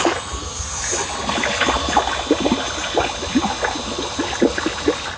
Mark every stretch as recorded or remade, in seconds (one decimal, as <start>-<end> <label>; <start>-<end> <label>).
0.0-5.2 recorded